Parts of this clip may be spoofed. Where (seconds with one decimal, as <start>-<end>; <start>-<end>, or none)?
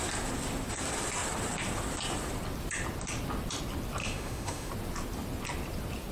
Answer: 4.0-4.7